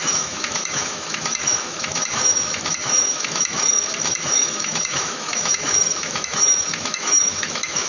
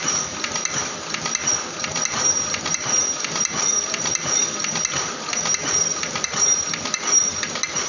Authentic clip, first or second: second